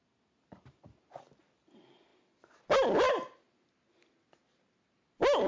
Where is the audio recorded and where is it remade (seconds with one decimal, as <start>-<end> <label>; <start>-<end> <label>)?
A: 0.0-5.5 recorded